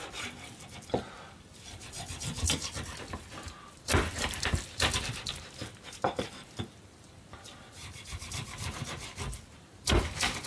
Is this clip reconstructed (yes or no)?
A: no